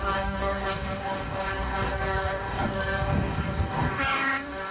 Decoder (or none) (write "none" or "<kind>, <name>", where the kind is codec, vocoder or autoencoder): codec, DAC